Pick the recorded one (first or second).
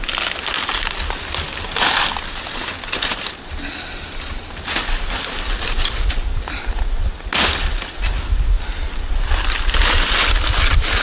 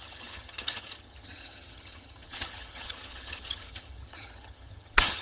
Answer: first